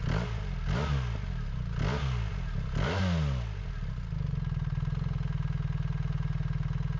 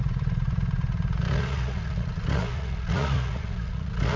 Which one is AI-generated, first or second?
second